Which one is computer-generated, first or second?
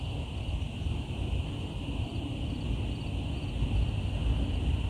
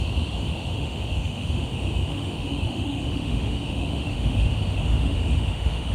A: second